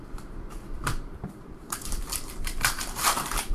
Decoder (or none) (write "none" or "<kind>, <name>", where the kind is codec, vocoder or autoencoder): vocoder, BigVGAN v2